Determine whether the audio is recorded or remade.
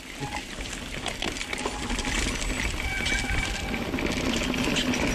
recorded